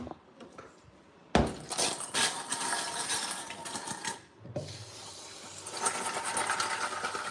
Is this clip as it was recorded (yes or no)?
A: yes